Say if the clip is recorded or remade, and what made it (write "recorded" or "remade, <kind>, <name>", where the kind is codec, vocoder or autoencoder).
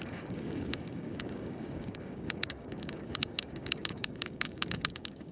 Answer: remade, codec, DAC